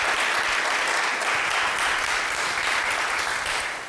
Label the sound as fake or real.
real